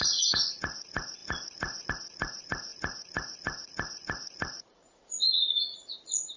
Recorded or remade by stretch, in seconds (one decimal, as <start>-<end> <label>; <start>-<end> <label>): 0.0-6.4 remade